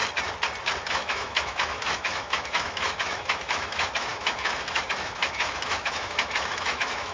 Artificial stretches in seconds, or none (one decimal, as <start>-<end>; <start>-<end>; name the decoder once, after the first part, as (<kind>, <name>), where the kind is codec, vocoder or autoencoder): 0.8-7.1 (autoencoder, DAC-VAE)